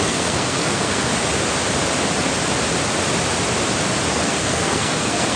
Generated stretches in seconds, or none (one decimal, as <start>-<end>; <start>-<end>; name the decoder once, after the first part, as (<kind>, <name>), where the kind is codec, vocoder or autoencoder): 0.0-1.1 (codec, SNAC); 4.1-5.4